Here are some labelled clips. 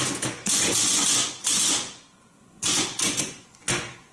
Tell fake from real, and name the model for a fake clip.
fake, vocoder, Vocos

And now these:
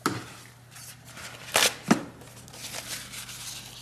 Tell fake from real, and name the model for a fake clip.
real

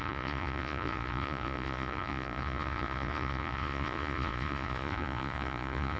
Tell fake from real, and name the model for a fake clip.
fake, vocoder, Vocos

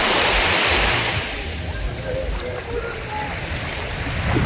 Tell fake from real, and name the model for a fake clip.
real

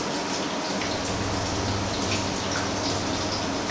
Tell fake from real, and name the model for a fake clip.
real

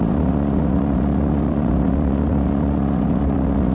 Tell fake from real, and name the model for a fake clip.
fake, vocoder, Vocos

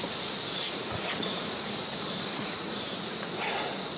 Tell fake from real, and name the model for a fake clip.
fake, vocoder, Vocos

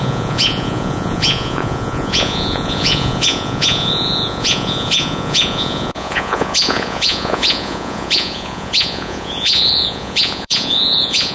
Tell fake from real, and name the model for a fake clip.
fake, vocoder, Vocos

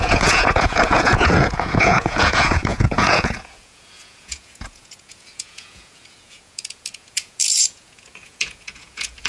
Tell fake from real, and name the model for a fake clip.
fake, vocoder, Vocos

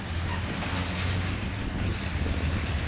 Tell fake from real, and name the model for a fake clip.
real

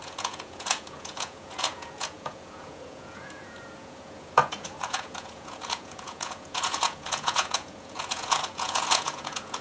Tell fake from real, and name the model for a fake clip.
fake, vocoder, Vocos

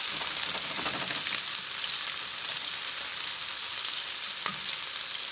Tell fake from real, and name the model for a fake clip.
real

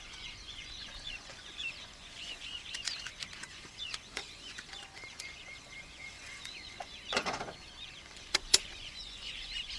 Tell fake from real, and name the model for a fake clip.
fake, vocoder, Vocos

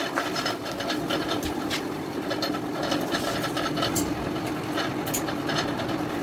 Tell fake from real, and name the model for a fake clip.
real